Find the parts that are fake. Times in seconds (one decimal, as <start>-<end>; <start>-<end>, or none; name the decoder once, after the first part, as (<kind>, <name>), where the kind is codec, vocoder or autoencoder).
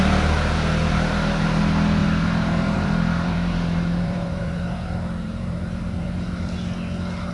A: 2.0-6.1 (vocoder, BigVGAN v2)